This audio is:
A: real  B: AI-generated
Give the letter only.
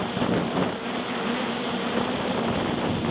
A